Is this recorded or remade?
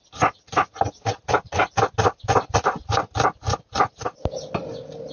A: recorded